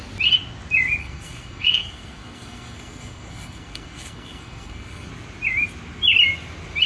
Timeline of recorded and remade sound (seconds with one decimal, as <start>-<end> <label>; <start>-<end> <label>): 0.0-1.0 recorded; 1.0-5.1 remade; 5.1-6.9 recorded